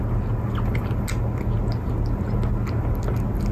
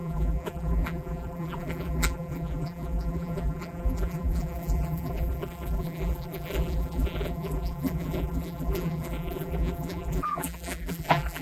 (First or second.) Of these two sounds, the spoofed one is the second